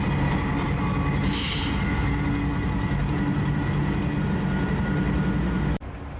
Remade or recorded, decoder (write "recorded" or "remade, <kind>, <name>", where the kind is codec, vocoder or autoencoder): recorded